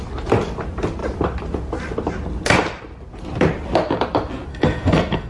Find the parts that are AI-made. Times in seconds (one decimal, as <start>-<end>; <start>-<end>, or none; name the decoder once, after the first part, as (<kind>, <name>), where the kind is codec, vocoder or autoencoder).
4.5-5.3 (codec, SNAC)

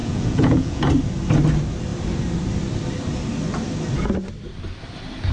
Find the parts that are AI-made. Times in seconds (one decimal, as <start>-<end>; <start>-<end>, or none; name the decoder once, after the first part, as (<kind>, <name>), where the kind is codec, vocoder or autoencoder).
0.0-0.8 (vocoder, Vocos)